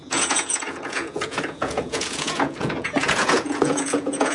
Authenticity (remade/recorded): remade